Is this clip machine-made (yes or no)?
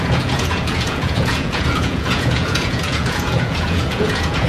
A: yes